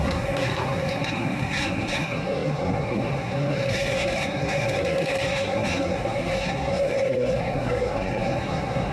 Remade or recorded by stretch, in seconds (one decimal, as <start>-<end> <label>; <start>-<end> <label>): 0.0-8.9 remade